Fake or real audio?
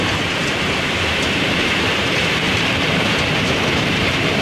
fake